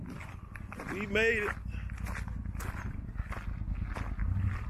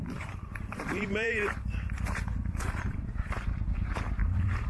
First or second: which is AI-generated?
second